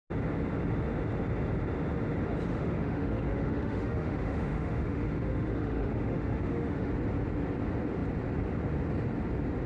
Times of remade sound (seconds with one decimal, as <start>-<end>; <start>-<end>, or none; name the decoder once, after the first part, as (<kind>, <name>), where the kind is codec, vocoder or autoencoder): 2.5-6.9 (autoencoder, DAC-VAE)